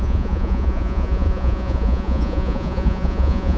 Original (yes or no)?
no